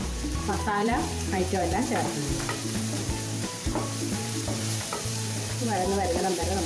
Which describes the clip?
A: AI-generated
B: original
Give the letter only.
A